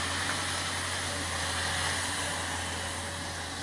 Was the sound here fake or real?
real